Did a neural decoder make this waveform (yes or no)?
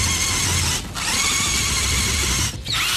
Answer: no